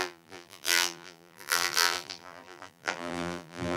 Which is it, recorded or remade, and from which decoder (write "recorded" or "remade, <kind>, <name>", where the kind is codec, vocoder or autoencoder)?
remade, vocoder, BigVGAN v2